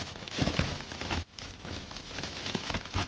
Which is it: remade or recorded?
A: remade